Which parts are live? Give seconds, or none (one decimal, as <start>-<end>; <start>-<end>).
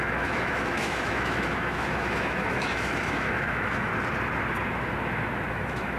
3.9-5.5